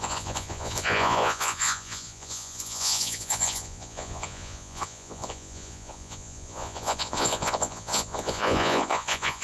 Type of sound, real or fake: fake